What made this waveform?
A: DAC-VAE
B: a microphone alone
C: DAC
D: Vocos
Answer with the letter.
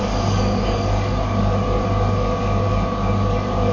C